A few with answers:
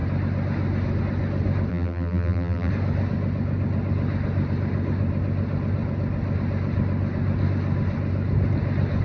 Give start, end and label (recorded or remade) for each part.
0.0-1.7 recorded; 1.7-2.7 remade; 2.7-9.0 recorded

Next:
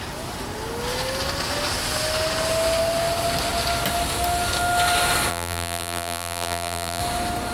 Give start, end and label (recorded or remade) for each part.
0.0-5.3 recorded; 5.3-7.0 remade; 7.0-7.5 recorded

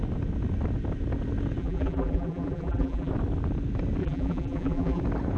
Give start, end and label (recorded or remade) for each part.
0.0-1.6 recorded; 1.6-3.1 remade; 3.1-4.0 recorded; 4.0-5.0 remade; 5.0-5.4 recorded

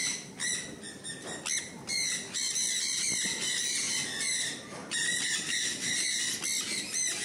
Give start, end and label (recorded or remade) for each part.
0.0-4.8 recorded; 4.8-5.9 remade; 5.9-7.2 recorded